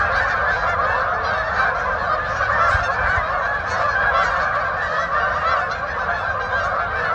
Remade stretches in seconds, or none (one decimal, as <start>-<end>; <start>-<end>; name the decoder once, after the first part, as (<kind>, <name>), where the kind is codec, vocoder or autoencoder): none